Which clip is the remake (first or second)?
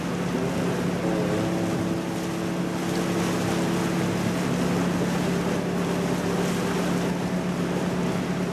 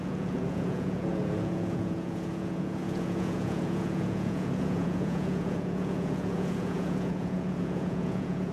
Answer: second